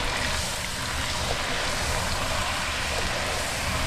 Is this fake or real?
real